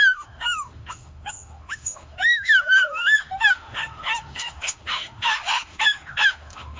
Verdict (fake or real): fake